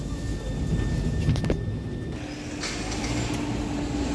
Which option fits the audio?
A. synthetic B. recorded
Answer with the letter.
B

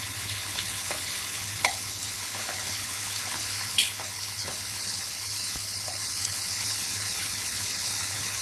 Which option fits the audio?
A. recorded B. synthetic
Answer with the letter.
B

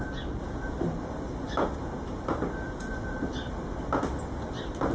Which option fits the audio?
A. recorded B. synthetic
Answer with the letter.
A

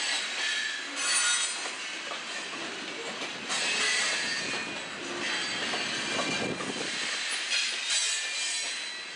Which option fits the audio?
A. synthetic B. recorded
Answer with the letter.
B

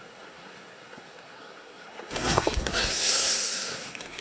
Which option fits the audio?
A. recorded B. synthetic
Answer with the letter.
B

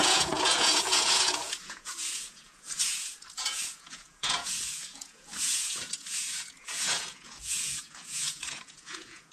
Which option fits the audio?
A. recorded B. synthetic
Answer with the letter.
B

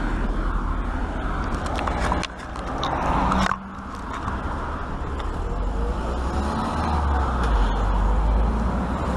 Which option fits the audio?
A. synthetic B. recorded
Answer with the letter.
B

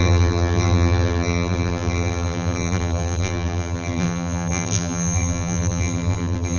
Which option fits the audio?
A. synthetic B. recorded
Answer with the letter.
A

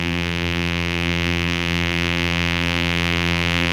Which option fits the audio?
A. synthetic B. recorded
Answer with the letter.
A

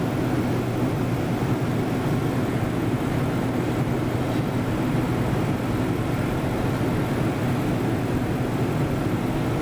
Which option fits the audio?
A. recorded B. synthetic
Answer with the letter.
A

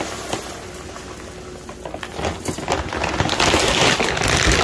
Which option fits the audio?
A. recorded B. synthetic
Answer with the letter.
A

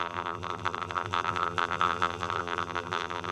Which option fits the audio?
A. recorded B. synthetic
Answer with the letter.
B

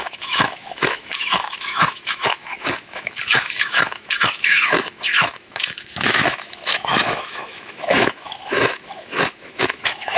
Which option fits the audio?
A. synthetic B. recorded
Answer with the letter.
A